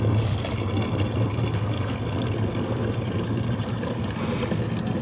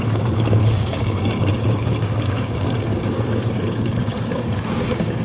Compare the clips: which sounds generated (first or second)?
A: second